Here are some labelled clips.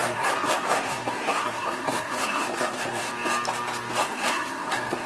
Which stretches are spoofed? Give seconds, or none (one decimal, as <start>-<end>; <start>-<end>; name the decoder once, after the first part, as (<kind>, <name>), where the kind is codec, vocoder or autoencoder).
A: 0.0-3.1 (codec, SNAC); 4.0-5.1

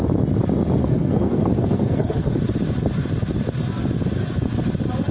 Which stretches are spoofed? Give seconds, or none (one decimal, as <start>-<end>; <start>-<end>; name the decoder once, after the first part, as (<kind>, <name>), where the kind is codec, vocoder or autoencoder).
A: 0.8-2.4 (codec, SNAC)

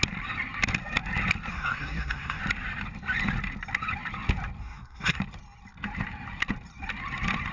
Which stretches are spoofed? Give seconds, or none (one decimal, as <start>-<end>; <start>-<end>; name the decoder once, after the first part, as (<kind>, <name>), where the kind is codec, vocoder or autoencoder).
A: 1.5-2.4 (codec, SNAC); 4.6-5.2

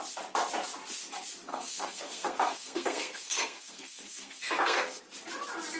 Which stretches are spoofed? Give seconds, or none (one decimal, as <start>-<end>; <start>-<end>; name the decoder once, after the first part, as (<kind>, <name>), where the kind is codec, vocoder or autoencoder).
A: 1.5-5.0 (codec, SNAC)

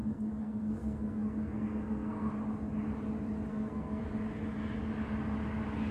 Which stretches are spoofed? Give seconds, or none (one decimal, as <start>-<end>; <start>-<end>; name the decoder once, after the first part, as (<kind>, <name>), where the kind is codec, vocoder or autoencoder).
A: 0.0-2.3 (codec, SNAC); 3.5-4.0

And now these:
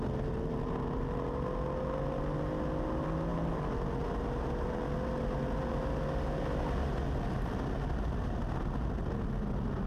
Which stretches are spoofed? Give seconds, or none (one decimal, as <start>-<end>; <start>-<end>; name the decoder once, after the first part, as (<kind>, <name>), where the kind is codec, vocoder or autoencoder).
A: none

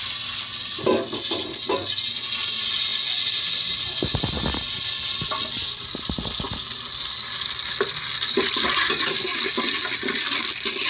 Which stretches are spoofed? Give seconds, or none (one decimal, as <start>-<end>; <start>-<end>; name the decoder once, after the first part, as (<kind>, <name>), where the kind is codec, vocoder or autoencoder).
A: none

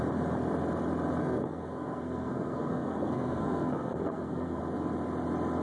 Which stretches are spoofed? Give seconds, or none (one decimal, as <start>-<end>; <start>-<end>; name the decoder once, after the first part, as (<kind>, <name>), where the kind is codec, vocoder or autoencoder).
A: 1.2-4.6 (codec, SNAC)